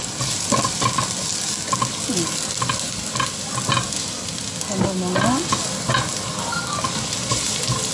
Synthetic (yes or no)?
no